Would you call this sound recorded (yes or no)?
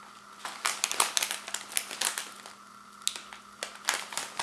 yes